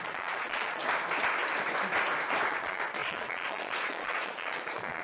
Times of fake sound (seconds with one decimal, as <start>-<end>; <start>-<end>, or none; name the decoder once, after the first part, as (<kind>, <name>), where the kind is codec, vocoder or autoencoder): 0.0-0.8 (vocoder, Vocos); 2.5-5.0